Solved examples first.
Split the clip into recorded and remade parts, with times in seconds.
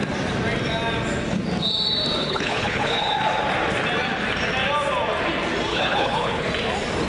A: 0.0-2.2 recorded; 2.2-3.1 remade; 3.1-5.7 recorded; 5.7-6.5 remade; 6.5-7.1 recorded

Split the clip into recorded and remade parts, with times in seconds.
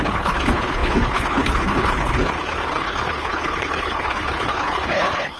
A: 0.0-5.4 remade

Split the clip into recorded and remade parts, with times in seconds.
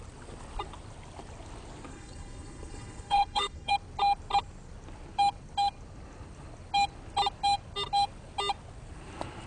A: 0.0-1.9 recorded; 1.9-3.7 remade; 3.7-9.5 recorded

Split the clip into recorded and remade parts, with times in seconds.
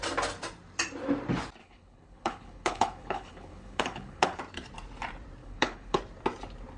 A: 0.0-1.6 recorded; 1.6-4.4 remade; 4.4-5.4 recorded; 5.4-6.0 remade; 6.0-6.8 recorded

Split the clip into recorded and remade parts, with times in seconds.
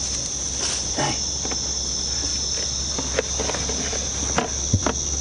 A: 0.0-5.2 recorded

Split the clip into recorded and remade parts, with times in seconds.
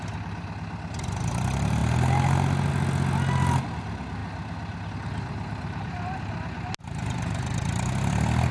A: 0.0-8.5 recorded